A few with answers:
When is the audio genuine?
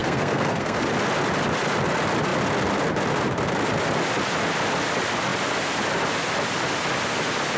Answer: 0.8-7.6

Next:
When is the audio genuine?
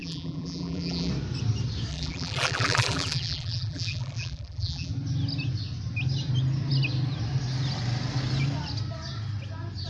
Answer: 1.1-1.9; 4.9-9.9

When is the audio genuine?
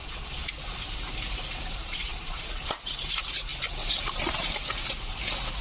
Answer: 0.5-1.8; 2.6-5.6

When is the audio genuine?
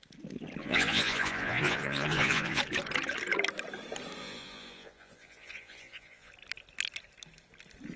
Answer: 0.0-0.6; 2.6-4.2; 6.3-8.0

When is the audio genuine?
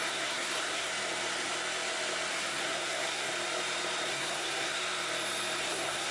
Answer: 0.9-2.3; 3.3-4.1; 4.8-5.6